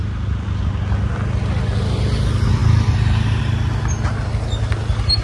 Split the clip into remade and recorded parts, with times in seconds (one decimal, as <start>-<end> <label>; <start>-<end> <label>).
0.0-5.2 recorded